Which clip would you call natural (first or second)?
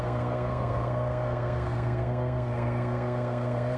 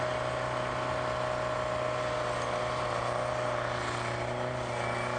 second